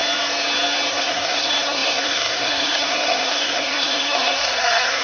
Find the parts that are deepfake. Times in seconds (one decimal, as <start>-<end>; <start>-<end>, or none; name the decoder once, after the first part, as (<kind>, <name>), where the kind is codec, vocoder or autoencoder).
0.9-5.0 (codec, SNAC)